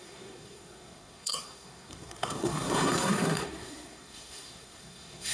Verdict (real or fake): fake